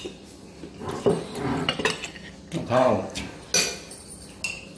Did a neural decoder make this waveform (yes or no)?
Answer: no